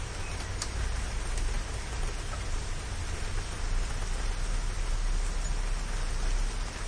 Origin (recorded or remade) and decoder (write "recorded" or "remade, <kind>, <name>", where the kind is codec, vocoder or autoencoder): recorded